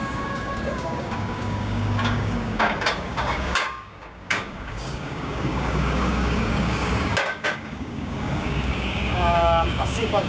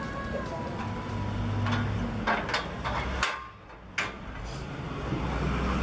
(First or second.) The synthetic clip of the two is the first